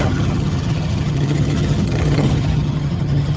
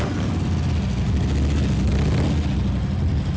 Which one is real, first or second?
second